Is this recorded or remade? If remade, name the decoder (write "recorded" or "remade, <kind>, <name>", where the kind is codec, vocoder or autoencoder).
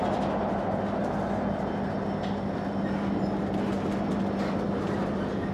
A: recorded